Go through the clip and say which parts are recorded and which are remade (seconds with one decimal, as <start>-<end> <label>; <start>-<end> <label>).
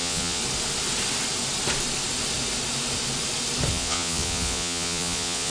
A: 0.0-0.4 remade; 0.4-3.7 recorded; 3.7-5.5 remade